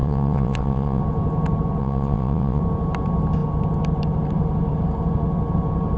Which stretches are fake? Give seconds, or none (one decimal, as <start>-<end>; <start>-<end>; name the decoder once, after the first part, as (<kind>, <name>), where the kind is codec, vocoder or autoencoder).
0.0-1.0 (vocoder, WaveNeXt); 1.8-2.6